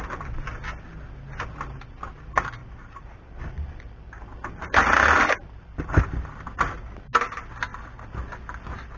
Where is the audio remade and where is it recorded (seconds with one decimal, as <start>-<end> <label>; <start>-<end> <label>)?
0.0-2.6 recorded; 2.6-3.5 remade; 3.5-9.0 recorded